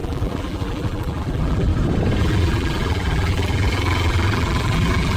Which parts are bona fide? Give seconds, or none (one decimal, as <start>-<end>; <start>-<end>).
1.7-2.2